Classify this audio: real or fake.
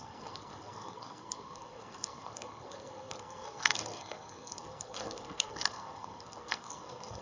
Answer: fake